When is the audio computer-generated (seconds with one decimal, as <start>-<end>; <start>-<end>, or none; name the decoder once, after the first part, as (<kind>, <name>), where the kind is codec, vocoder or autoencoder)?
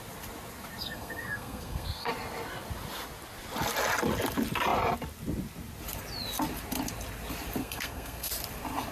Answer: 0.8-2.1 (codec, SNAC); 7.6-8.3